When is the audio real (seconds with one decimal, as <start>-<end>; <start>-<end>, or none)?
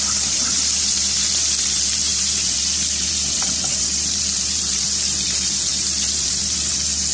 none